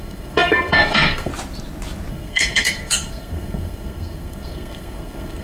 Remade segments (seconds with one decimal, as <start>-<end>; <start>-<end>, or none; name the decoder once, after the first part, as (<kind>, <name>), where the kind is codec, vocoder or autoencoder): 0.0-1.3 (codec, SNAC); 2.1-5.4